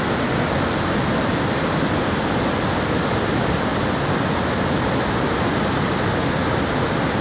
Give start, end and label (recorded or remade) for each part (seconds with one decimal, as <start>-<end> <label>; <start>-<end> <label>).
0.0-7.2 recorded